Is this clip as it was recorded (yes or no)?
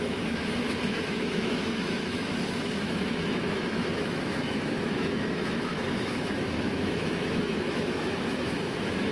no